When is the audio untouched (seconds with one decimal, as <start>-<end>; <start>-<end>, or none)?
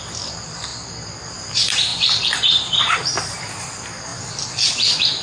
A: 0.7-1.3